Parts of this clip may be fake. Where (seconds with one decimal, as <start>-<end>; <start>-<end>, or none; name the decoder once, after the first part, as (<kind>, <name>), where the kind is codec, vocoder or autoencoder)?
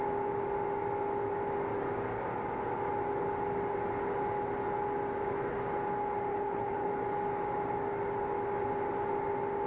6.3-6.9 (codec, HILCodec)